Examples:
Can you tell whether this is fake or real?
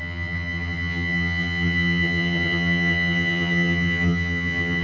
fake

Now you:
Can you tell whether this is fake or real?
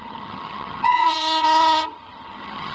fake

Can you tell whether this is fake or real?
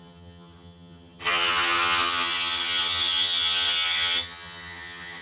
fake